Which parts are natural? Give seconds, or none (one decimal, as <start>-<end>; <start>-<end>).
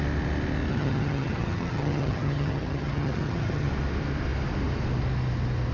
0.0-0.7; 3.7-5.7